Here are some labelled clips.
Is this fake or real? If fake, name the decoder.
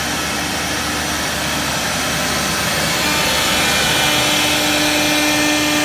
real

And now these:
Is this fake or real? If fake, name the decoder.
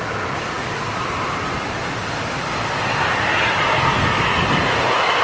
real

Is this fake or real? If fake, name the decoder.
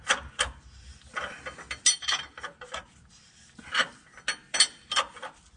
real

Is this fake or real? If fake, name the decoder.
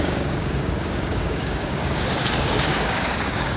fake, codec, DAC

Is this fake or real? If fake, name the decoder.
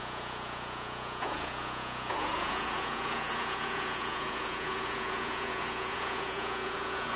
fake, vocoder, Vocos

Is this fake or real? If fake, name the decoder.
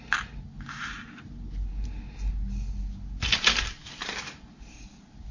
real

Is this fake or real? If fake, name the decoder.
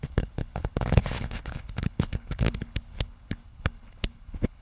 fake, codec, HILCodec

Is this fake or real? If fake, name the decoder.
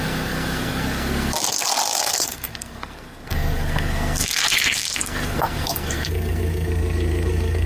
fake, codec, SNAC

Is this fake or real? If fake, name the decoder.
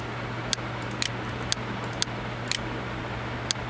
real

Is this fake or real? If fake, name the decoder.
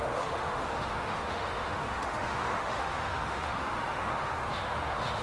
fake, autoencoder, DAC-VAE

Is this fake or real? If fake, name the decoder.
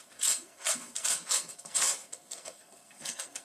fake, codec, SNAC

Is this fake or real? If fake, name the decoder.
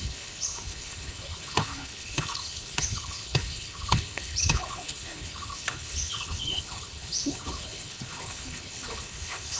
fake, codec, HILCodec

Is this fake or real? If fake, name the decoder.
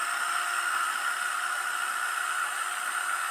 real